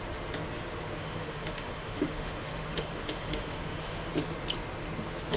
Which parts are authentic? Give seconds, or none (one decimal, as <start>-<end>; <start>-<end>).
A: 0.0-1.0; 4.1-5.4